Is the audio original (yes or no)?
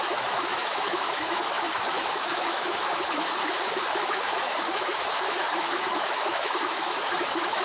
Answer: no